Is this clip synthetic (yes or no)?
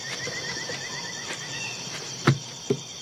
yes